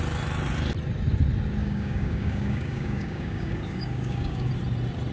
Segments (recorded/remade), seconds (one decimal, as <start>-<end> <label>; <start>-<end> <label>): 0.0-1.6 recorded; 1.6-4.5 remade; 4.5-5.1 recorded